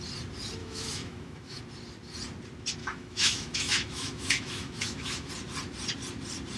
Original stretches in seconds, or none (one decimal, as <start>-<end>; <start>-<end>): 0.0-0.6; 1.6-2.8; 5.3-6.6